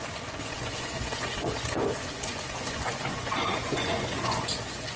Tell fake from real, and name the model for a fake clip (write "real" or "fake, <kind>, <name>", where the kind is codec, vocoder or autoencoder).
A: fake, vocoder, Vocos